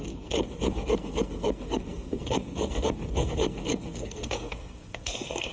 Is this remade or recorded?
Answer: remade